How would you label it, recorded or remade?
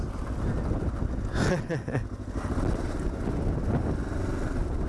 recorded